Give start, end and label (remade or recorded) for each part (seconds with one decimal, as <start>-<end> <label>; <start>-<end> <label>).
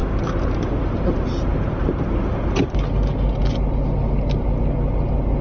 0.0-2.0 remade; 2.0-5.4 recorded